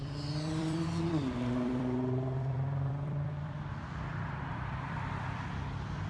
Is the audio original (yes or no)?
no